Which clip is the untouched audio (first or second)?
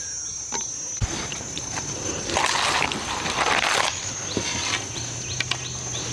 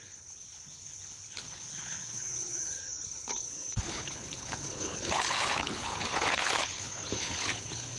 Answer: first